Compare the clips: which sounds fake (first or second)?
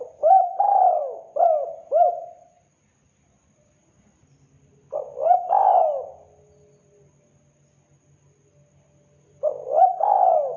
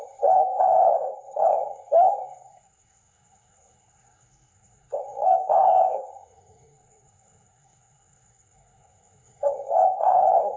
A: second